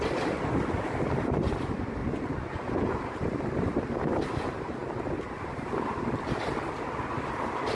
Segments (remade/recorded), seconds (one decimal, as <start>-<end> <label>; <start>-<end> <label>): 0.0-2.0 recorded; 2.0-3.0 remade; 3.0-7.7 recorded